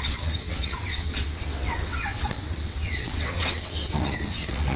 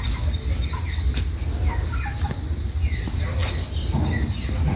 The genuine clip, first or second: second